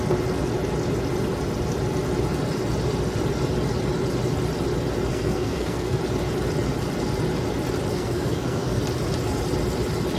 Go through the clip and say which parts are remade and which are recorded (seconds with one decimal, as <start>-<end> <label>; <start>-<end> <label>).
0.0-5.1 recorded; 5.1-6.0 remade; 6.0-7.9 recorded; 7.9-8.8 remade; 8.8-10.2 recorded